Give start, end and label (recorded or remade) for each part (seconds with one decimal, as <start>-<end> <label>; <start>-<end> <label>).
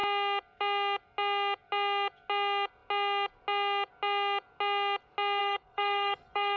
0.0-5.4 recorded; 5.4-6.6 remade